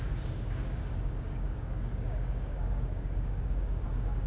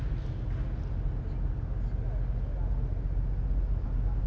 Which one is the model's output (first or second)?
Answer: first